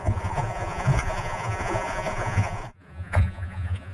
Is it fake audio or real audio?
fake